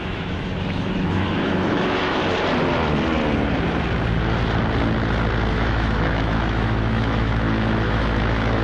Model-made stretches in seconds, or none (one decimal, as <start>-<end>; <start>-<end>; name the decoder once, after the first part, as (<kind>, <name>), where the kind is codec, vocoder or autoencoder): 0.0-2.2 (autoencoder, DAC-VAE); 5.5-8.6